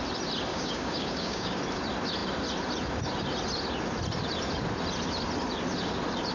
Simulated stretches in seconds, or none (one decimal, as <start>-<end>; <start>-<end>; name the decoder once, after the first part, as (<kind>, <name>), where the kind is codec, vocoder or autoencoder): 0.5-1.6 (codec, DAC)